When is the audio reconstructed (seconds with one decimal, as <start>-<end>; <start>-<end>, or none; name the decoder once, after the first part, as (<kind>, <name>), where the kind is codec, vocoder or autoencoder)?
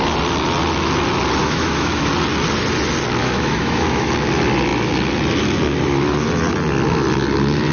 1.4-2.1 (autoencoder, DAC-VAE); 3.2-4.1